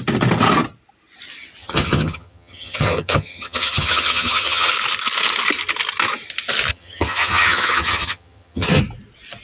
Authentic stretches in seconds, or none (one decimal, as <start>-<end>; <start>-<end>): 0.0-1.6; 4.7-6.7; 8.8-9.4